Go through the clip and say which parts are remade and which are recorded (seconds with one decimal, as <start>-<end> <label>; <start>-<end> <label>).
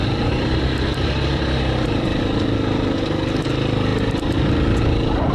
0.0-0.9 recorded; 0.9-2.2 remade; 2.2-5.3 recorded